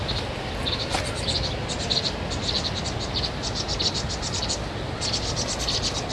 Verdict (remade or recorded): recorded